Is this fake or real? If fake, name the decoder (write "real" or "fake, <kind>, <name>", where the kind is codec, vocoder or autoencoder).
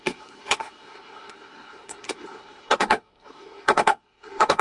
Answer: fake, codec, SNAC